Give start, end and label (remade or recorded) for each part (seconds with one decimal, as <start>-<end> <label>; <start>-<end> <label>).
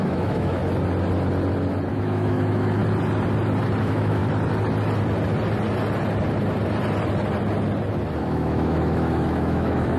0.0-0.6 remade; 0.6-1.9 recorded; 1.9-2.8 remade; 2.8-3.8 recorded; 3.8-4.2 remade; 4.2-8.2 recorded; 8.2-10.0 remade